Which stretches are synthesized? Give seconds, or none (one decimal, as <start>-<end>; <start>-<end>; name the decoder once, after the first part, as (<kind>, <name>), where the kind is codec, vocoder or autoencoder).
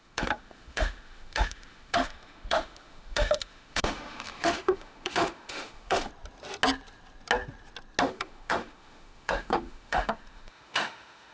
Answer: 0.0-6.1 (autoencoder, DAC-VAE); 8.0-11.3